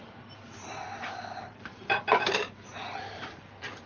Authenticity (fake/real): fake